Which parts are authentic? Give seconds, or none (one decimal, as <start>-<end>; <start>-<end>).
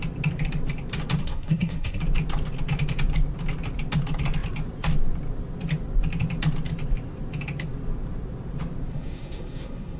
0.0-1.2; 2.0-8.9